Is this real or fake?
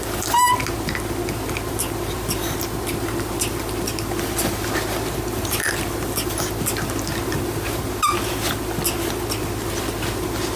real